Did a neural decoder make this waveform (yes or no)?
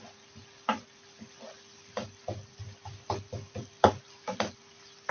no